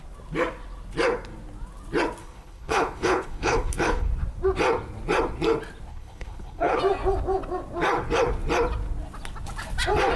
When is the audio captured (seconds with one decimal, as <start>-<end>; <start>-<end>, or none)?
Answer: 0.0-2.2; 4.1-5.9; 6.8-10.2